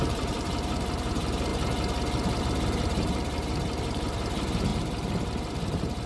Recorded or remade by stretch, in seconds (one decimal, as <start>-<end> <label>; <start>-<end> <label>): 0.0-1.5 remade; 1.5-2.4 recorded; 2.4-6.1 remade